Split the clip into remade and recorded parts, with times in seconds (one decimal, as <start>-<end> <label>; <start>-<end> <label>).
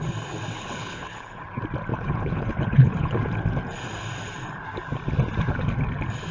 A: 0.0-0.6 recorded; 0.6-1.4 remade; 1.4-1.9 recorded; 1.9-3.2 remade; 3.2-6.3 recorded